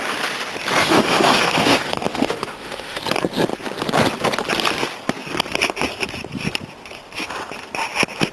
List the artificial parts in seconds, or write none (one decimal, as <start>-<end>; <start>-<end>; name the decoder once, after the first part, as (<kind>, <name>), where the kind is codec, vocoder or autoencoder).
0.8-3.0 (autoencoder, DAC-VAE)

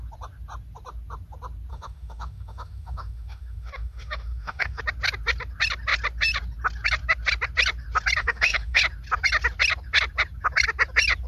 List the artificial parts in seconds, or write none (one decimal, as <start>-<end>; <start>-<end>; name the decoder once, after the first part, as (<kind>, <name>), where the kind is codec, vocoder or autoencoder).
1.7-4.8 (autoencoder, DAC-VAE); 8.2-8.8

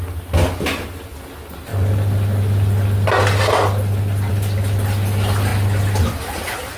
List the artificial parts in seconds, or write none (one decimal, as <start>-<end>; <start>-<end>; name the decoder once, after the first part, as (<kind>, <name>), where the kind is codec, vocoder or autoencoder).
none

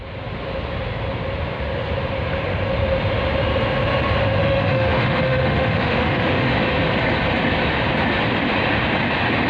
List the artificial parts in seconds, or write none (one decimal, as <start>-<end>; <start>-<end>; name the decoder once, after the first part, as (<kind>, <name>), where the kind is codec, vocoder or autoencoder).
4.4-6.5 (autoencoder, DAC-VAE)